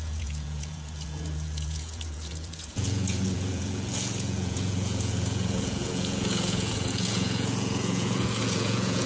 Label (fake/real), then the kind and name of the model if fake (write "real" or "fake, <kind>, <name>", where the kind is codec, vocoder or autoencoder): fake, vocoder, Vocos